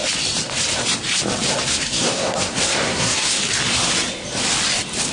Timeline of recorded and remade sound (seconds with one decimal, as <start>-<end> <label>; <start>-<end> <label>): 0.0-1.7 recorded; 1.7-3.4 remade; 3.4-5.1 recorded